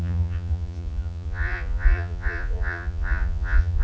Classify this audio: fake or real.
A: fake